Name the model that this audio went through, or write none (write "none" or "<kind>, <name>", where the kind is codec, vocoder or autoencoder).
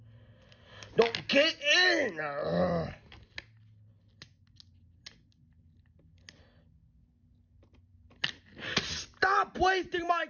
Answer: none